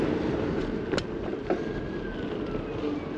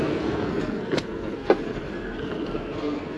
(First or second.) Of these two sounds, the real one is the first